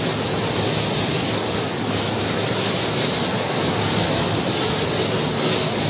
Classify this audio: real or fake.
real